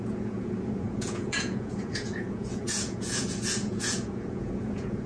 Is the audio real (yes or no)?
no